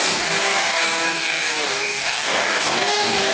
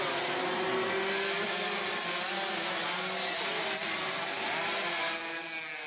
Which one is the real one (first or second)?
second